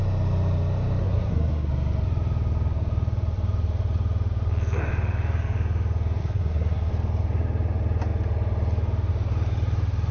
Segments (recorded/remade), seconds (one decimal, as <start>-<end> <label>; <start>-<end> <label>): 0.0-1.0 recorded; 1.0-1.7 remade; 1.7-6.2 recorded; 6.2-6.9 remade; 6.9-10.1 recorded